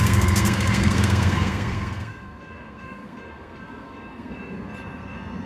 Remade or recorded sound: remade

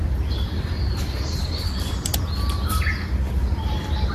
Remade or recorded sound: recorded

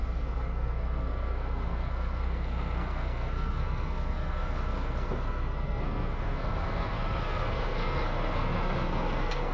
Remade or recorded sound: remade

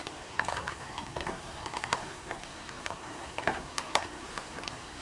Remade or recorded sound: remade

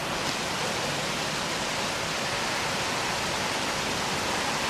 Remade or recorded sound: recorded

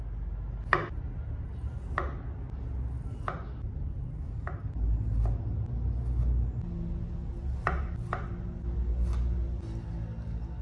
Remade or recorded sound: recorded